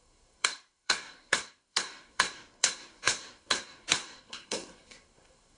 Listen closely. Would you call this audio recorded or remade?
remade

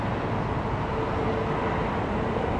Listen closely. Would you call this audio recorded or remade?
recorded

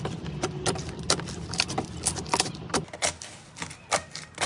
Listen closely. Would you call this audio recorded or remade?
recorded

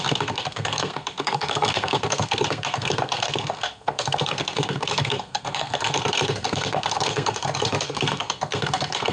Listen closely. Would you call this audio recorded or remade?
remade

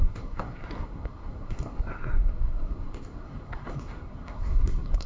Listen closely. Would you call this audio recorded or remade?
remade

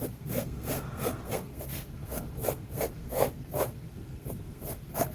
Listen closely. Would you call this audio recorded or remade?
remade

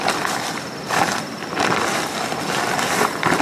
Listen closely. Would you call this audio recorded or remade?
recorded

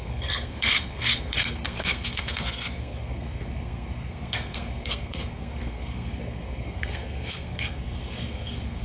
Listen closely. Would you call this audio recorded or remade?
remade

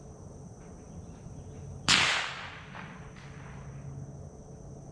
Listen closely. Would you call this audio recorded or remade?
recorded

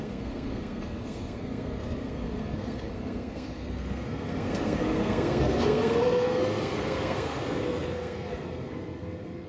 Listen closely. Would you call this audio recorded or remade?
remade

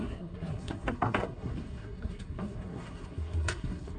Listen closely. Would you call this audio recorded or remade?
remade